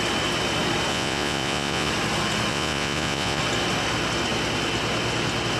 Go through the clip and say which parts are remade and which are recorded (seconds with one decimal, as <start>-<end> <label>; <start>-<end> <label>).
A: 0.0-0.9 recorded; 0.9-1.9 remade; 1.9-2.5 recorded; 2.5-3.4 remade; 3.4-5.6 recorded